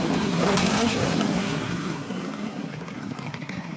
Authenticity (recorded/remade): remade